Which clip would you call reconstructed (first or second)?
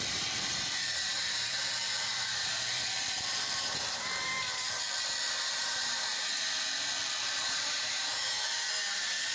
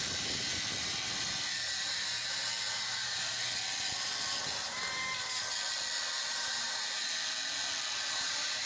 first